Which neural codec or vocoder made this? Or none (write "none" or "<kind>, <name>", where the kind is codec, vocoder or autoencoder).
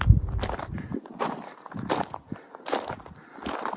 none